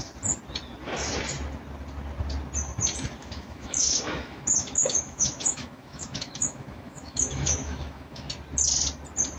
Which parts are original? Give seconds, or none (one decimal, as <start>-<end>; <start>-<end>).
0.0-3.2; 8.3-9.4